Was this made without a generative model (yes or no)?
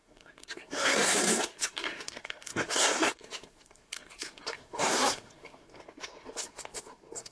no